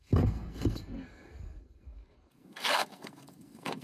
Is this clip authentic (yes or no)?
no